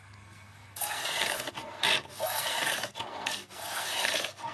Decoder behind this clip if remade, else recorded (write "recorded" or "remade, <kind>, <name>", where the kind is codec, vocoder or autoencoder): remade, codec, SNAC